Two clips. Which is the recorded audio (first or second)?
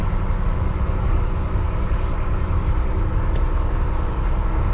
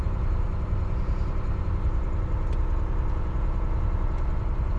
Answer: second